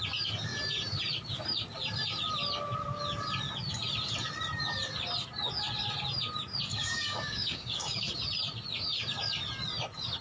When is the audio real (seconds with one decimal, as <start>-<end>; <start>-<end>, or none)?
0.0-6.7; 8.1-10.2